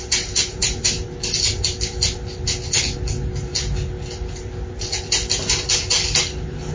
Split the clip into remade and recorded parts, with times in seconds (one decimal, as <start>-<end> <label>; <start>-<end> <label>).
0.0-6.7 recorded